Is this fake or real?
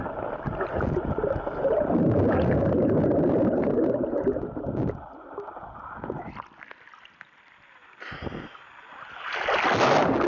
real